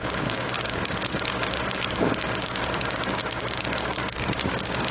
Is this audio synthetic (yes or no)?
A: yes